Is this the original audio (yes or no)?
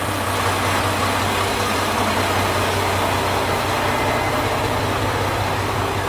yes